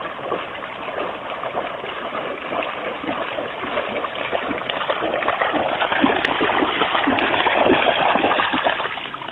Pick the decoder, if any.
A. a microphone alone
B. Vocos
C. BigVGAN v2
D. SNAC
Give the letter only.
A